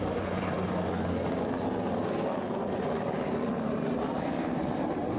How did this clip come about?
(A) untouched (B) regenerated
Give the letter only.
A